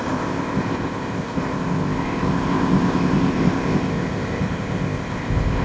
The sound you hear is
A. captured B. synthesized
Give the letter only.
B